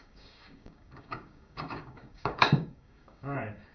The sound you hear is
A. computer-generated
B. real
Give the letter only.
A